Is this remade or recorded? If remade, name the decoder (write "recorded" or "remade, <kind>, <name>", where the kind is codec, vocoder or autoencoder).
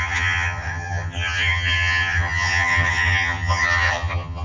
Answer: remade, vocoder, HiFi-GAN